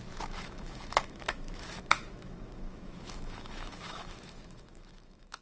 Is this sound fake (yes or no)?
yes